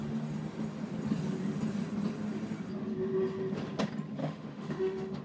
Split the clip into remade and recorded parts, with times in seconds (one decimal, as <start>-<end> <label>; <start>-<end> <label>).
0.0-4.2 recorded; 4.2-5.2 remade